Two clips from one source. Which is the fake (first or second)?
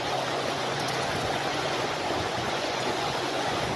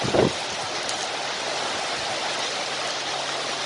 first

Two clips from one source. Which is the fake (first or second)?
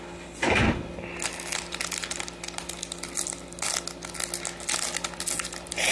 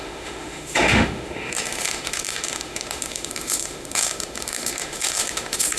second